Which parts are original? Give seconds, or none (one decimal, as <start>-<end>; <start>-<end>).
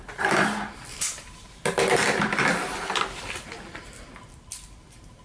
0.0-0.9; 1.5-5.2